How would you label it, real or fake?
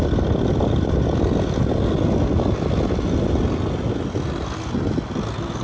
real